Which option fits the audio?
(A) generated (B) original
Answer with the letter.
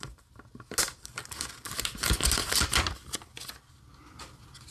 B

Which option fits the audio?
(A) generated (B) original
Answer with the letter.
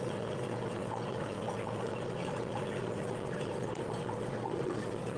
A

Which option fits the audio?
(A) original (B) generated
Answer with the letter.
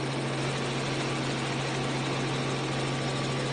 A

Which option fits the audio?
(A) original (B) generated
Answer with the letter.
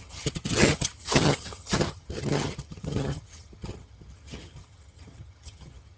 B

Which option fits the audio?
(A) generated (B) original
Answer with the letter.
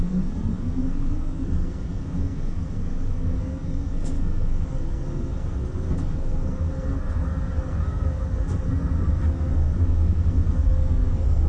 A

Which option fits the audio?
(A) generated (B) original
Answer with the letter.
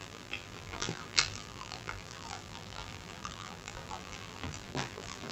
A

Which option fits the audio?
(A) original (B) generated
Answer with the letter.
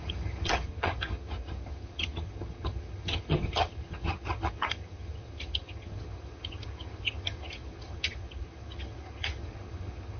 B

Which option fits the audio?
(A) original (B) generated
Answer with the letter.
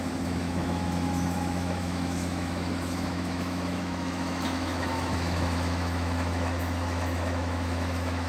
B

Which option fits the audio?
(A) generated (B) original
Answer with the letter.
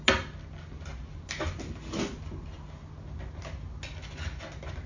B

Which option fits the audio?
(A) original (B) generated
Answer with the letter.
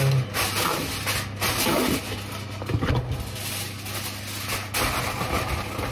A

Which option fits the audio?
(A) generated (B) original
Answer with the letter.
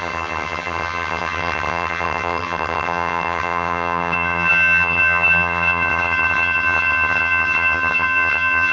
A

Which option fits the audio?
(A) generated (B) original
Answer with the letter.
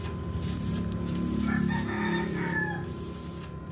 B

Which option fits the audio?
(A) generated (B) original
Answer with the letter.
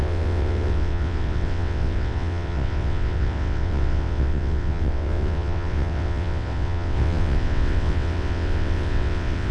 A